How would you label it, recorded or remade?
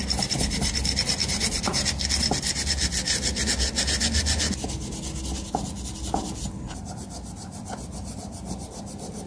recorded